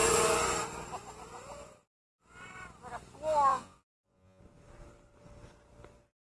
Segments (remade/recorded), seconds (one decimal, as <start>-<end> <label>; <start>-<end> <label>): 0.0-3.5 recorded; 3.5-4.4 remade; 4.4-6.2 recorded